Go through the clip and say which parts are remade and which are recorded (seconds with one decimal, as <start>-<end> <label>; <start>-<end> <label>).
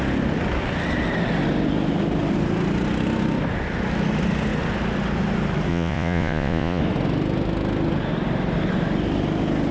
0.0-5.7 recorded; 5.7-6.8 remade; 6.8-9.7 recorded